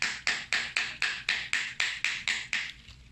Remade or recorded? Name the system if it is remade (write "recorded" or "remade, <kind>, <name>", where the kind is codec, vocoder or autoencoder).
recorded